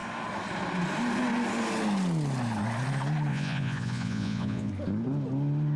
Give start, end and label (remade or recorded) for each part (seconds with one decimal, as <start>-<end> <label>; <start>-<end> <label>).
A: 0.0-3.3 recorded; 3.3-4.7 remade; 4.7-5.8 recorded